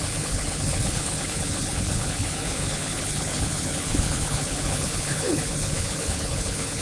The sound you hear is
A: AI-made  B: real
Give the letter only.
A